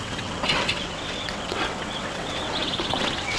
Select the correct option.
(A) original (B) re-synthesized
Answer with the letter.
B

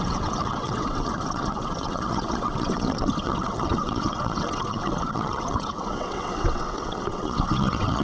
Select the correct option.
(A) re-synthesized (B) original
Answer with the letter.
A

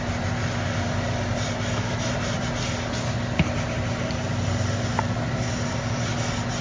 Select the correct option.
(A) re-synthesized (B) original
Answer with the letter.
B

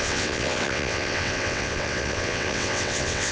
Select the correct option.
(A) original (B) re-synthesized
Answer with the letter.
B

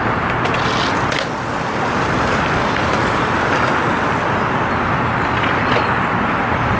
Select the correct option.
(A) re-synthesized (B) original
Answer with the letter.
B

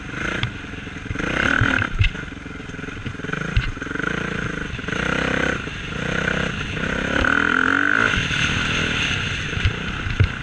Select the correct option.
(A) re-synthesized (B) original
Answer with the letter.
B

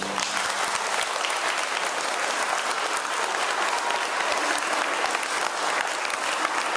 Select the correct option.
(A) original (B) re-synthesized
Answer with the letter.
A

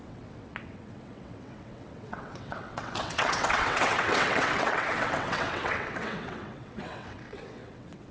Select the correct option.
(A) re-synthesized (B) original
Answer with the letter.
A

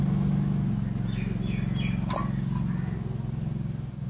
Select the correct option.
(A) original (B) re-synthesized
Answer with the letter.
A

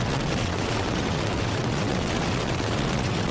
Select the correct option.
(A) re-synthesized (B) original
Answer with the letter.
A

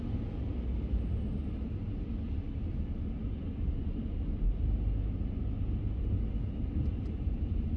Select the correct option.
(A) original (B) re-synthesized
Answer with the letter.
A